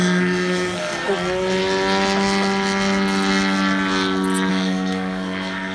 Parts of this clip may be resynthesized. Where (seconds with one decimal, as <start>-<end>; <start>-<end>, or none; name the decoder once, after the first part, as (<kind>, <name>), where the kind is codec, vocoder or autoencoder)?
0.0-1.1 (codec, SNAC); 4.5-5.7